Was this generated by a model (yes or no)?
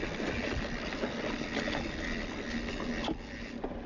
no